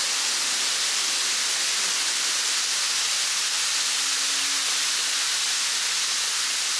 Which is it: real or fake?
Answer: real